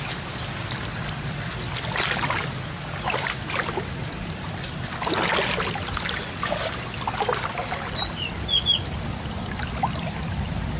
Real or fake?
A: real